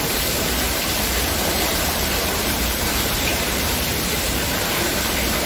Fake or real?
fake